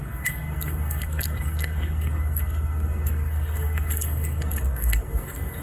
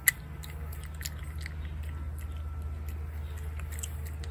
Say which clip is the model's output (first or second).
first